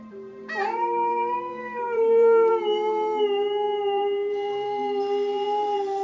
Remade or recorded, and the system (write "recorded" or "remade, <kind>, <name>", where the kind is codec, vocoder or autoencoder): remade, vocoder, BigVGAN v2